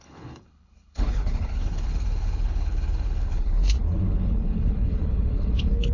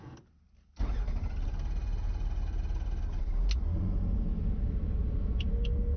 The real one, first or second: second